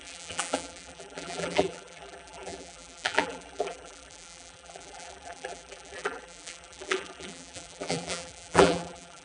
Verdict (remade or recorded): remade